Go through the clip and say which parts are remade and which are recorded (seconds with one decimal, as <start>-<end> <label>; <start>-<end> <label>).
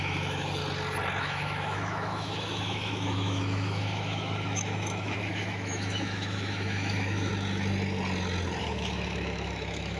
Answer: 0.0-0.6 remade; 0.6-1.2 recorded; 1.2-7.3 remade; 7.3-8.6 recorded; 8.6-10.0 remade